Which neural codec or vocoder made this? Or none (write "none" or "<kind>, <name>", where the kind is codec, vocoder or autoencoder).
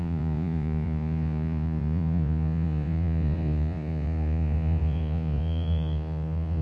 vocoder, Vocos